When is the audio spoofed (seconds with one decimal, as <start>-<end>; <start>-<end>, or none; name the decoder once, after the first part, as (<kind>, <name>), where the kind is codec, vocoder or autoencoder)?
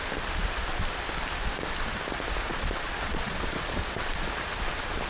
2.4-3.8 (vocoder, Vocos)